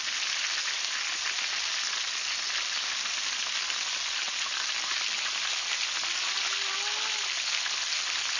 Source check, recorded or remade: recorded